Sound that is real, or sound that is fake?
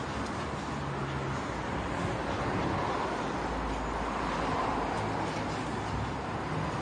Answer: real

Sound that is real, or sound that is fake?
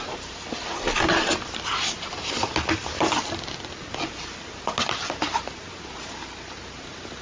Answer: real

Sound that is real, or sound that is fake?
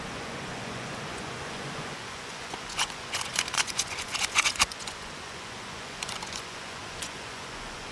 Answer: fake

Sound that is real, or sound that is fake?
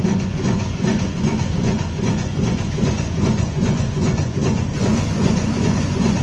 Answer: fake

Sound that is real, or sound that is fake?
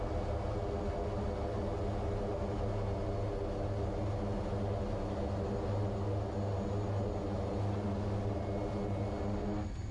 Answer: real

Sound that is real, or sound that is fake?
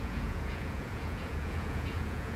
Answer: fake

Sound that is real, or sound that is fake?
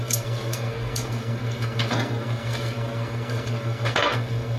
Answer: fake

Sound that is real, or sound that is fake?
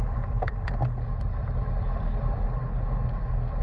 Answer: real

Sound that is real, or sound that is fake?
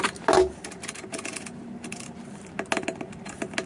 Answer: real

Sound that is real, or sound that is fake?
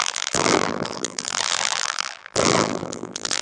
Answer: fake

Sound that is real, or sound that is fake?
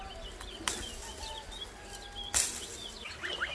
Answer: real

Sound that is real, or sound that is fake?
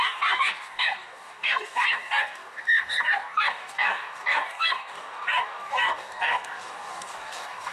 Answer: fake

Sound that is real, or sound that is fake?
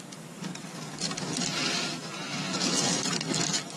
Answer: fake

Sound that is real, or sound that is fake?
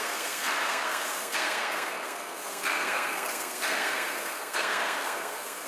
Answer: fake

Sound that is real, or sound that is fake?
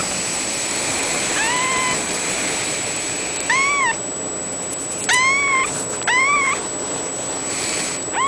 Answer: real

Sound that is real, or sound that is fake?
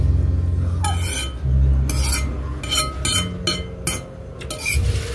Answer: real